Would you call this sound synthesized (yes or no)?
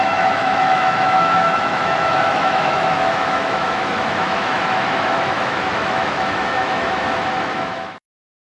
yes